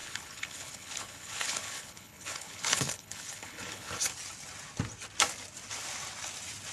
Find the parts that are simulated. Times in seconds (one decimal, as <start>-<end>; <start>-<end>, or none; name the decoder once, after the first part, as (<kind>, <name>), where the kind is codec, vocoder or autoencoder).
0.0-4.0 (codec, HILCodec)